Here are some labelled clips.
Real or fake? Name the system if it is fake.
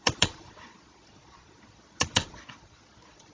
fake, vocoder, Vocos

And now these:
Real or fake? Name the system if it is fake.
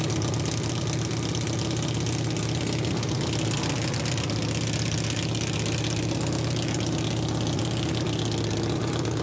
real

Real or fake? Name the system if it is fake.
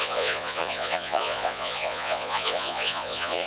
fake, vocoder, Vocos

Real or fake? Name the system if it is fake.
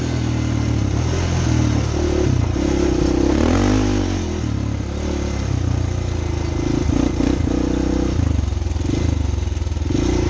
real